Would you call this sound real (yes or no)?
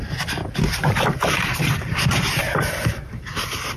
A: no